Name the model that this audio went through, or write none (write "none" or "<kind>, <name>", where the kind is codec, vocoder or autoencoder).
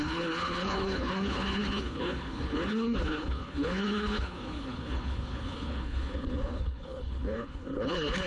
codec, HILCodec